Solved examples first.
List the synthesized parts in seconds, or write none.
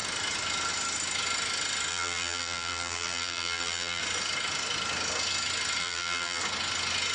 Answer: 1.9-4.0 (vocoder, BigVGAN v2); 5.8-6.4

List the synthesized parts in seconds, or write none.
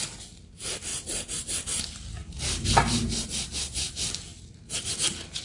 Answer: 2.2-3.3 (vocoder, BigVGAN v2)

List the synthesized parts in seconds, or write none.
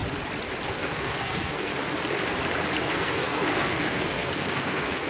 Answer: 0.7-1.7 (codec, SNAC); 2.8-5.1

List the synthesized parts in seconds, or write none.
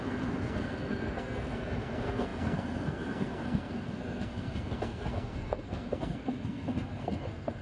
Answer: 0.0-7.6 (codec, SNAC)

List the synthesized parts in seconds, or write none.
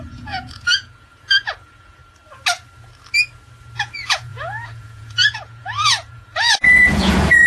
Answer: 0.0-2.0 (vocoder, Vocos); 3.8-7.5